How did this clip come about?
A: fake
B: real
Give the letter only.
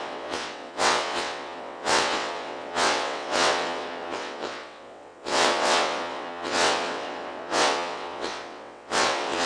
A